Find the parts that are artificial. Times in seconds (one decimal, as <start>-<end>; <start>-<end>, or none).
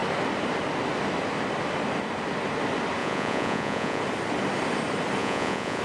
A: 3.0-4.0; 5.2-5.8